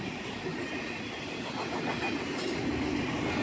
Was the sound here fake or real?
real